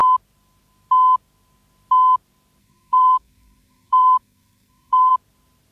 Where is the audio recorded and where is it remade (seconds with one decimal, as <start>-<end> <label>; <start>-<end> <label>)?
0.0-2.6 recorded; 2.6-5.1 remade; 5.1-5.7 recorded